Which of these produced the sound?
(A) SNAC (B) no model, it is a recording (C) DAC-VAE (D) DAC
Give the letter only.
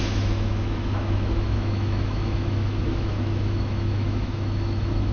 C